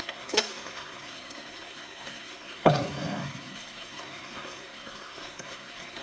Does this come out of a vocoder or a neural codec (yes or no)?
yes